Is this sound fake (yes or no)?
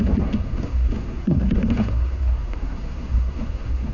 yes